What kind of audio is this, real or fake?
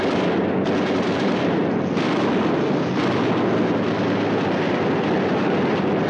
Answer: real